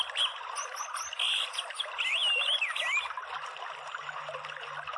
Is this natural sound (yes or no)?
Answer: yes